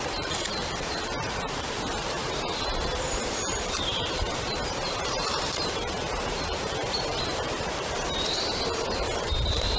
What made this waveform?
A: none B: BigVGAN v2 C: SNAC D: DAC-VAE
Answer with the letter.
B